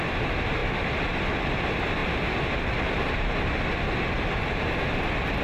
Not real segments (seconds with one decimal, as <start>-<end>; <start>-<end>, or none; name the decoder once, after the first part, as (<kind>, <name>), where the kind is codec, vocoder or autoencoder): 0.6-1.4 (vocoder, BigVGAN v2)